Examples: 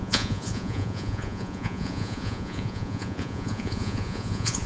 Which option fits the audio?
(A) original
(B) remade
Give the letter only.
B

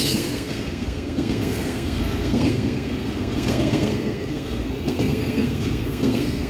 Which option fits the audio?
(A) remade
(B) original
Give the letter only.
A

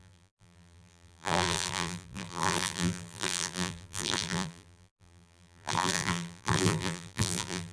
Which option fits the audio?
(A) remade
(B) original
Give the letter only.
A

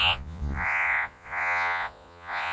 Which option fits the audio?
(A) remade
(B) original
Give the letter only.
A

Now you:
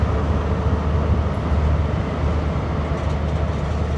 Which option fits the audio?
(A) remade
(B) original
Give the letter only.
B